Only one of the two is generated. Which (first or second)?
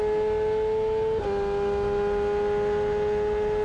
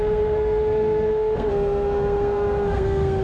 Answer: second